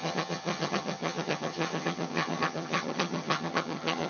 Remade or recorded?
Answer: remade